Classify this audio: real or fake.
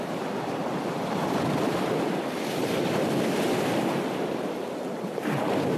real